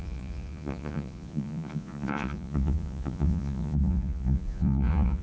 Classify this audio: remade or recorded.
remade